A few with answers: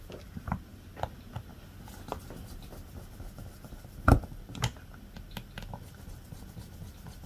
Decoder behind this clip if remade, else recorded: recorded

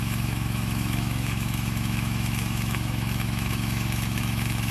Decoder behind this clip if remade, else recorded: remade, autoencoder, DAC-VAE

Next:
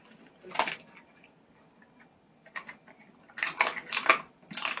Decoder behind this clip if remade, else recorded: recorded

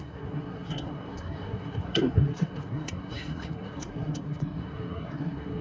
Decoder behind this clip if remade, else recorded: remade, codec, SNAC